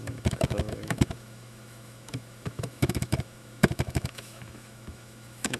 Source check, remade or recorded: remade